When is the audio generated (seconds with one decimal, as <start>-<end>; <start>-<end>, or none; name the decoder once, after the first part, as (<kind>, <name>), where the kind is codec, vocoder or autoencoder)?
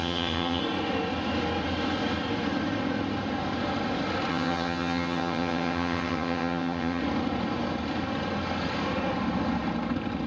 0.0-0.6 (vocoder, HiFi-GAN); 4.3-7.0